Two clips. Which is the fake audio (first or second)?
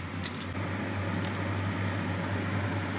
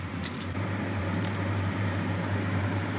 second